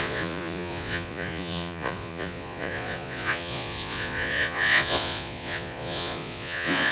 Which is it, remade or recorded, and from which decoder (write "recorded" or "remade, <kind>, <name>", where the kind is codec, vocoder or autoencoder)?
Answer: remade, vocoder, Vocos